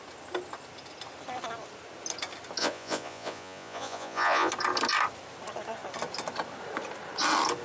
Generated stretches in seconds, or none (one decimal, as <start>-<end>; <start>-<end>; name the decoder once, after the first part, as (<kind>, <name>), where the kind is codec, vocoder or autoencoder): 2.6-4.5 (vocoder, Vocos)